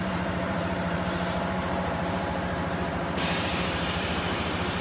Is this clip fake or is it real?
fake